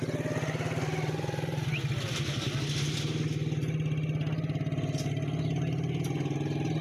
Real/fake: real